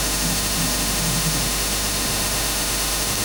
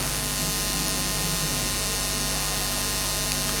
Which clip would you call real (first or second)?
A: second